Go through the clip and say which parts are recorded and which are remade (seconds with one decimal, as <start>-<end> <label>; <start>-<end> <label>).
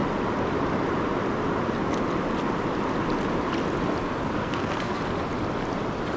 0.0-4.4 recorded; 4.4-5.0 remade; 5.0-6.2 recorded